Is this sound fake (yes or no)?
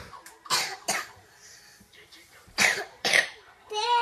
yes